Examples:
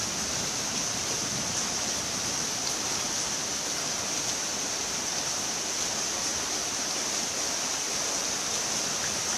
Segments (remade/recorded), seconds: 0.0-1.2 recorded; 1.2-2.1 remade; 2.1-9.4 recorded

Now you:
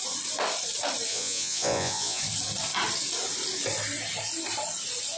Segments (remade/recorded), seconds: 0.0-1.1 recorded; 1.1-2.2 remade; 2.2-5.2 recorded